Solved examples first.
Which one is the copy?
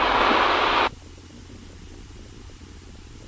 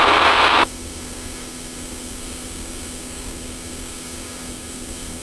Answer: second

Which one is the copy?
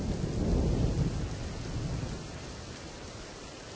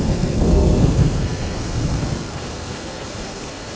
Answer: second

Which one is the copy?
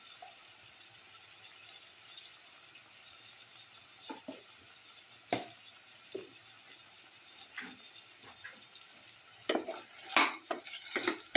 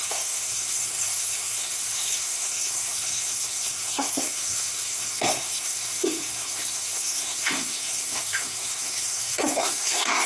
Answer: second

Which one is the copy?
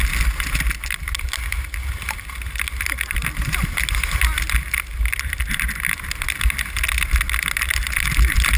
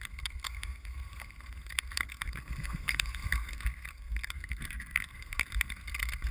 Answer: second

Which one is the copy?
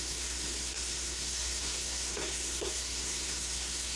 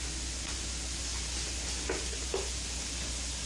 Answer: first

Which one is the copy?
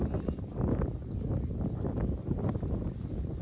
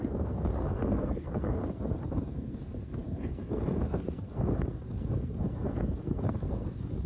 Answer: second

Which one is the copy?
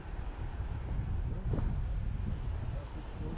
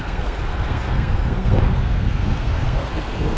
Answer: second